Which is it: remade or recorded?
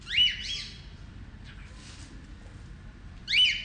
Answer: recorded